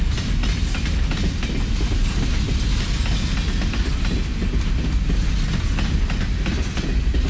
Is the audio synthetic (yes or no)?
no